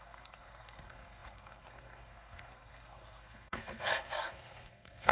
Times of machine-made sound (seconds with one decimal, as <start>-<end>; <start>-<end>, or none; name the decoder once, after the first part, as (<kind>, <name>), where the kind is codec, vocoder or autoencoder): 0.0-5.1 (codec, SNAC)

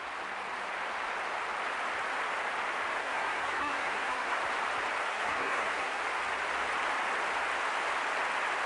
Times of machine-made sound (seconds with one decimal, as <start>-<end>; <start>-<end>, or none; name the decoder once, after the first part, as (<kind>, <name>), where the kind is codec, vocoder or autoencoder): 3.0-4.4 (codec, SNAC); 5.1-6.0

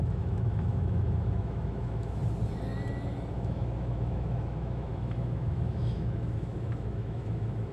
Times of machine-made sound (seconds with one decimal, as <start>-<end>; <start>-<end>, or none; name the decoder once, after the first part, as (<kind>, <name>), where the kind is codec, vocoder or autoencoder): 0.0-2.2 (autoencoder, DAC-VAE); 3.3-7.7

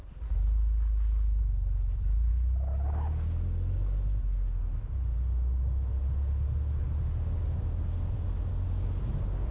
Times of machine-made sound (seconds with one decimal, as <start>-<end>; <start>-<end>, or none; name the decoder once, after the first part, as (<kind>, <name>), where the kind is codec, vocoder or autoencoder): 1.4-2.3 (vocoder, BigVGAN v2)

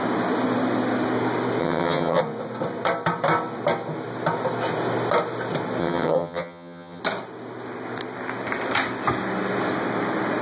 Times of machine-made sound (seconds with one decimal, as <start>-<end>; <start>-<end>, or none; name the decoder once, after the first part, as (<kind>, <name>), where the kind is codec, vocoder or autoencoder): 1.6-2.2 (vocoder, HiFi-GAN); 5.8-7.0